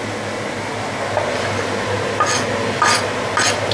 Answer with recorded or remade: recorded